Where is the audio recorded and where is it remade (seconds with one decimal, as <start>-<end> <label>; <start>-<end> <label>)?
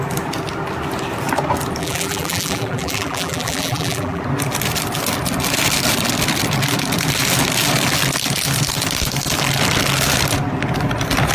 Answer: 0.0-1.8 recorded; 1.8-4.2 remade; 4.2-11.3 recorded